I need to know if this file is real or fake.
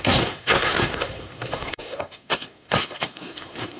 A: fake